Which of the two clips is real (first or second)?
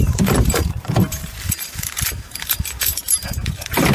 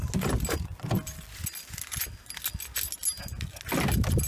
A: second